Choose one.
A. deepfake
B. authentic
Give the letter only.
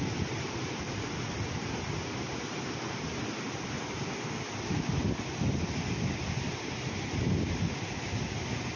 B